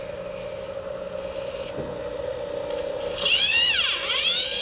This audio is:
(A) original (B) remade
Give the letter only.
A